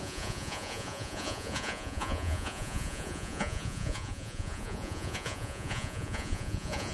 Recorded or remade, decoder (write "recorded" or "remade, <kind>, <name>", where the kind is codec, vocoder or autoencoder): remade, vocoder, Vocos